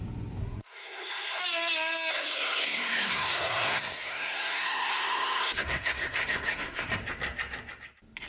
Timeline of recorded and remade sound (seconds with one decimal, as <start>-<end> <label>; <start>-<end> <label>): 0.0-0.4 recorded; 0.4-1.4 remade; 1.4-2.1 recorded; 2.1-7.0 remade; 7.0-8.3 recorded